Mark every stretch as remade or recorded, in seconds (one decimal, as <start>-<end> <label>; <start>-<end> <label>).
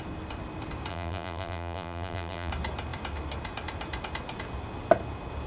0.0-0.9 recorded; 0.9-2.5 remade; 2.5-5.5 recorded